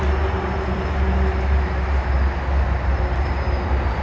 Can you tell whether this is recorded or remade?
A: recorded